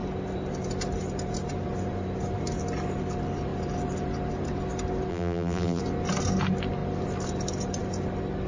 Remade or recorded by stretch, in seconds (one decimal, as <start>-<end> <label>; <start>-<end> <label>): 0.0-5.1 recorded; 5.1-5.8 remade; 5.8-8.5 recorded